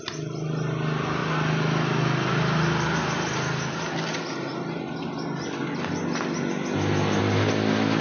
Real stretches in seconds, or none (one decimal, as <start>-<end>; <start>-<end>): 0.0-8.0